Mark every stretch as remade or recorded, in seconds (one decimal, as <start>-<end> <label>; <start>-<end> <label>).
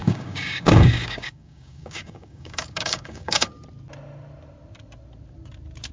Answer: 0.0-3.5 remade; 3.5-5.9 recorded